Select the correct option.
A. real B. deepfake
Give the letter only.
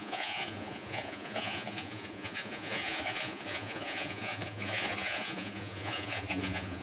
B